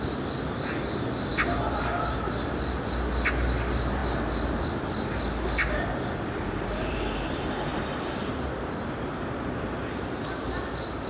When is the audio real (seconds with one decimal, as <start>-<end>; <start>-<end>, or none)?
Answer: 0.0-11.1